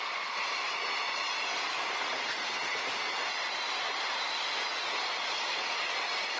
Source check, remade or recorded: recorded